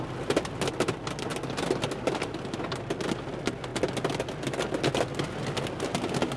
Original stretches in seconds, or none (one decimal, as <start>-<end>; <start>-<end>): 0.0-6.4